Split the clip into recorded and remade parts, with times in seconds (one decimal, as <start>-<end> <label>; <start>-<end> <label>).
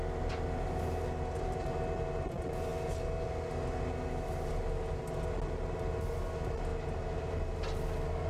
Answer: 0.0-8.3 recorded